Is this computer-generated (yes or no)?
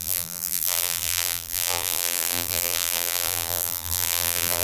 yes